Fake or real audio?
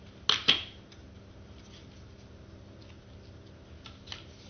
real